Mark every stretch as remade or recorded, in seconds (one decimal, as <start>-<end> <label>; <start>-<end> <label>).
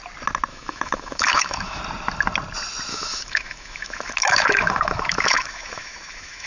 0.0-0.5 recorded; 0.5-1.8 remade; 1.8-2.9 recorded; 2.9-6.5 remade